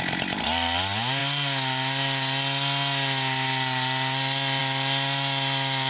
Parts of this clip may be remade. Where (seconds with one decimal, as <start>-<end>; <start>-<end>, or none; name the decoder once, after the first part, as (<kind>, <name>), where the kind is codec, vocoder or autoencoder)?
none

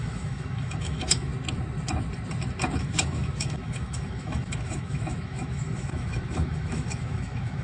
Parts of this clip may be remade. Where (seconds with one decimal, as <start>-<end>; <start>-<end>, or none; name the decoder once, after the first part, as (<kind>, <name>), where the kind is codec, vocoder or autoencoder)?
0.0-1.3 (autoencoder, DAC-VAE); 2.8-7.6

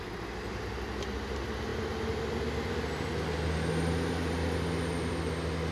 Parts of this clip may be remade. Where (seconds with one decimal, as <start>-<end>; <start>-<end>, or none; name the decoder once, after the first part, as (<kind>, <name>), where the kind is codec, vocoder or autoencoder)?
none

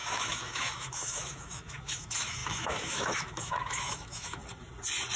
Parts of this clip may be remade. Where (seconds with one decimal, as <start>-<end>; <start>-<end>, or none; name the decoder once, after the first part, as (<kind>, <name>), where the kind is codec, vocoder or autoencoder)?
0.0-4.4 (autoencoder, DAC-VAE)

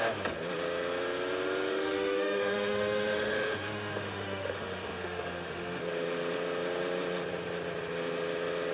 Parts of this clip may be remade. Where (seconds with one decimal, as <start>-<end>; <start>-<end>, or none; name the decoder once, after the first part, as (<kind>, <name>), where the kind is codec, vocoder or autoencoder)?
1.7-5.8 (autoencoder, DAC-VAE)

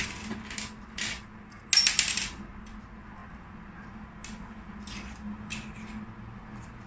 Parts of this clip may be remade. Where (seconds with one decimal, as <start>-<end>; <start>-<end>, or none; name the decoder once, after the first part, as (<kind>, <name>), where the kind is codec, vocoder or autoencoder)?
none

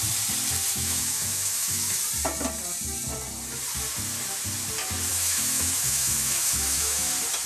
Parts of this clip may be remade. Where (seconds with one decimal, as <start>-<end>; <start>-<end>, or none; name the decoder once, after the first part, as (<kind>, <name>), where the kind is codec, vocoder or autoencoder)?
0.7-2.0 (autoencoder, DAC-VAE); 5.1-7.1